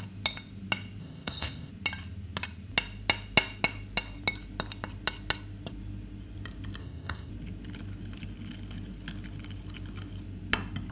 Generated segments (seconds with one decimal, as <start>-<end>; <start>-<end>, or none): 1.0-1.7; 6.8-7.3